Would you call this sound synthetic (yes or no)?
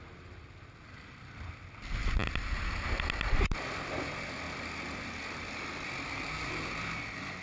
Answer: no